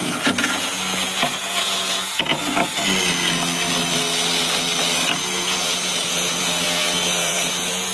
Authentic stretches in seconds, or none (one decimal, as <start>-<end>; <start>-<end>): 2.4-5.2